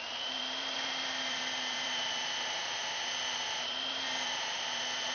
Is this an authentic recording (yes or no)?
no